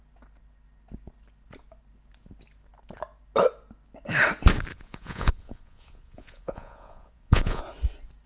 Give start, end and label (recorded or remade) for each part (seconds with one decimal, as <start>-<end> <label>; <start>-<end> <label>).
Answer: 0.0-4.7 recorded; 4.7-7.6 remade; 7.6-8.3 recorded